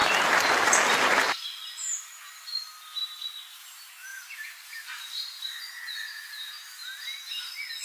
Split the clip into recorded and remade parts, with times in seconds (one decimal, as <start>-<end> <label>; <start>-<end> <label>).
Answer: 0.0-2.1 remade; 2.1-4.1 recorded; 4.1-5.6 remade; 5.6-7.8 recorded